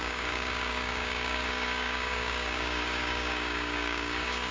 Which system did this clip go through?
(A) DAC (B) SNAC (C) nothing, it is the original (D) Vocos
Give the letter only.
A